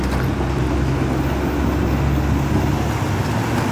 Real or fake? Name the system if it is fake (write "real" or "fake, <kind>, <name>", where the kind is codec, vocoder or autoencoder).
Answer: real